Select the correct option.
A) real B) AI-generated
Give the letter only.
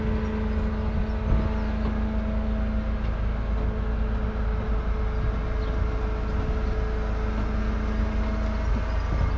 A